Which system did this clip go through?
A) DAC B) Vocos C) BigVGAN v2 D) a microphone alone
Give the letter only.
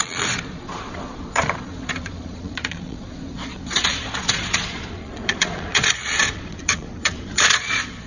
B